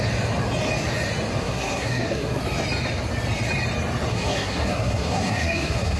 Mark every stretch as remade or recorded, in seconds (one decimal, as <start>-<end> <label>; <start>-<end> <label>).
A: 0.0-1.4 recorded; 1.4-2.4 remade; 2.4-4.1 recorded; 4.1-6.0 remade